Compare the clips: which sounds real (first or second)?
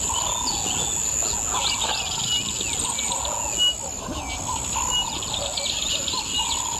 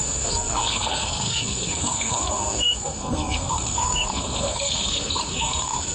first